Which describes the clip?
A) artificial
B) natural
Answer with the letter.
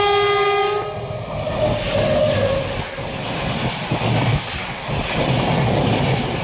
B